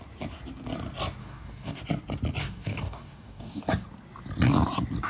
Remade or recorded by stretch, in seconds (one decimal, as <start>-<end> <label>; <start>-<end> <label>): 0.0-1.2 recorded; 1.2-1.8 remade; 1.8-2.4 recorded; 2.4-3.6 remade; 3.6-5.1 recorded